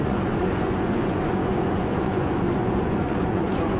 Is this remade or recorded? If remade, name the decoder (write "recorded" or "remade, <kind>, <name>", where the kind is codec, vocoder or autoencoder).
remade, vocoder, Vocos